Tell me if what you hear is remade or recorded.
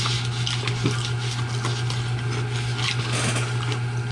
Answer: recorded